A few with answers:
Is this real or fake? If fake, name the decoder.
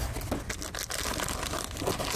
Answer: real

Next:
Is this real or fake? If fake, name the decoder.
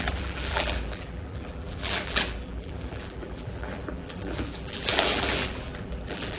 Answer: fake, vocoder, BigVGAN v2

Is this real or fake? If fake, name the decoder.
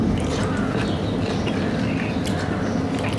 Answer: real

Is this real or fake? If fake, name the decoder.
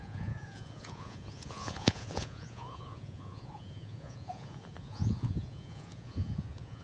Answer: fake, vocoder, Vocos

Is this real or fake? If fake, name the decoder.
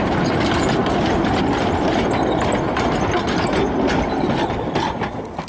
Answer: real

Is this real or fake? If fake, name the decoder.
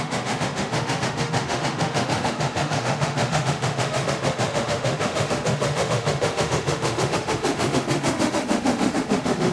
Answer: fake, autoencoder, DAC-VAE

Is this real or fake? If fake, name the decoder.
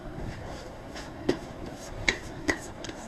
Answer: fake, codec, SNAC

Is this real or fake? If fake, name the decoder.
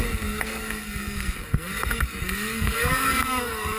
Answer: fake, codec, SNAC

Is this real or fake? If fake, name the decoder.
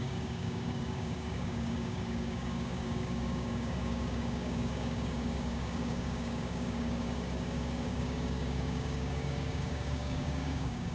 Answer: fake, codec, DAC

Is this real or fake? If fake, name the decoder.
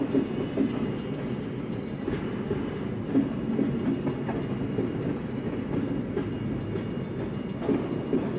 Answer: real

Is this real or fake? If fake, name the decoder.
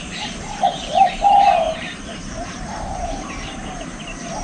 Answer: fake, vocoder, BigVGAN v2